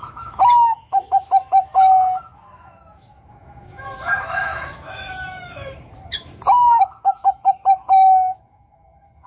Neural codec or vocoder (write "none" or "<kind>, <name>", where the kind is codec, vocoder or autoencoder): autoencoder, DAC-VAE